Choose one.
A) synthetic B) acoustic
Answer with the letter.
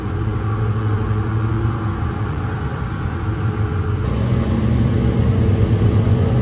A